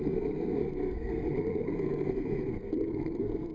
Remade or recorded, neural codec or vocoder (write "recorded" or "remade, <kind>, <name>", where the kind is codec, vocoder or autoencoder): remade, codec, SNAC